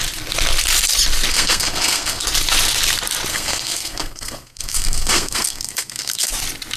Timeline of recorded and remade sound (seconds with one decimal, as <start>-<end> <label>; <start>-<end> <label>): 0.0-1.3 recorded; 1.3-2.2 remade; 2.2-3.3 recorded; 3.3-6.3 remade; 6.3-6.8 recorded